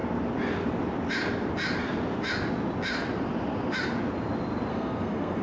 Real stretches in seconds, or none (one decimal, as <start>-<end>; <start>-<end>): 0.0-4.7